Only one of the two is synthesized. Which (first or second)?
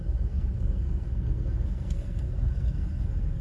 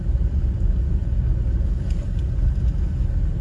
first